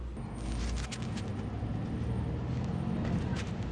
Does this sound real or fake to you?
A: real